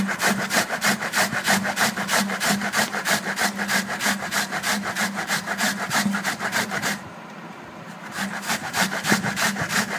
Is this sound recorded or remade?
remade